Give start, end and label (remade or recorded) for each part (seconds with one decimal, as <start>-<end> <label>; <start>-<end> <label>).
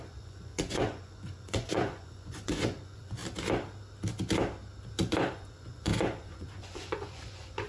0.0-3.2 remade; 3.2-5.3 recorded; 5.3-7.7 remade